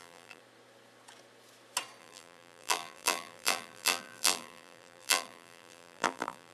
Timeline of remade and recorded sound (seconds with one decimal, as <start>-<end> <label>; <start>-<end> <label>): 0.0-0.4 remade; 0.4-2.0 recorded; 2.0-6.5 remade